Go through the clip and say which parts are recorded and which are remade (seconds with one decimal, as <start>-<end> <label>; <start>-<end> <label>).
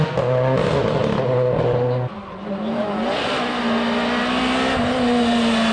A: 0.0-5.7 recorded